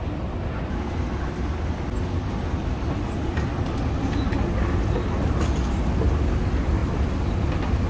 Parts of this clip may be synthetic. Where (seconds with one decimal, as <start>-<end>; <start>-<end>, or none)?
none